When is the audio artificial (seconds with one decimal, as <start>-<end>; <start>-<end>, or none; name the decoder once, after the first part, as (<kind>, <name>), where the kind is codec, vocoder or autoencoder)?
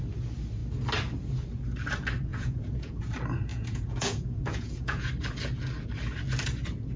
2.3-3.0 (vocoder, Vocos); 3.5-5.1